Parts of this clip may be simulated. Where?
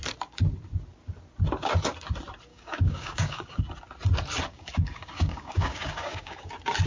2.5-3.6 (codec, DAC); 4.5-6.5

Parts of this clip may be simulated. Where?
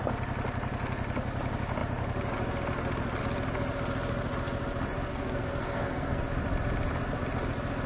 5.1-6.2 (codec, SNAC)